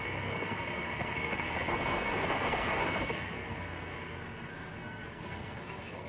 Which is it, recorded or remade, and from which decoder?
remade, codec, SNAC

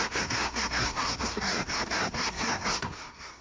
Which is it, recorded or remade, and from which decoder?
remade, codec, SNAC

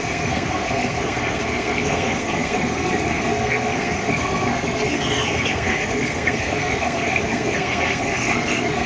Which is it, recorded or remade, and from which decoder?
remade, codec, SNAC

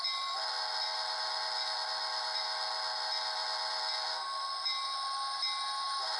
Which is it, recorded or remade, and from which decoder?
recorded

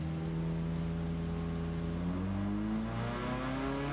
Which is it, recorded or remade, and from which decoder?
recorded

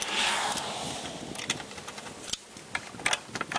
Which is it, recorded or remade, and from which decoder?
recorded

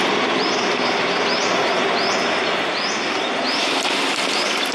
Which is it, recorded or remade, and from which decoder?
recorded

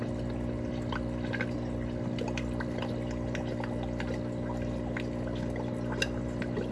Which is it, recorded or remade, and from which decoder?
recorded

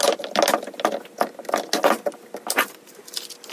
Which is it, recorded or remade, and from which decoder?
recorded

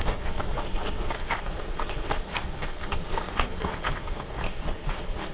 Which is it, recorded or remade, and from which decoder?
remade, codec, SNAC